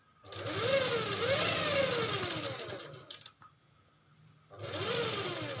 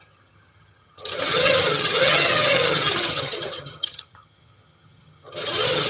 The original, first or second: first